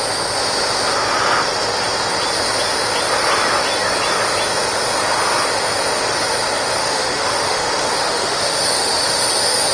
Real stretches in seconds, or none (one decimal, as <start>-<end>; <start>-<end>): 0.0-6.8